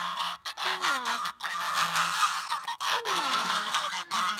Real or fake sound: fake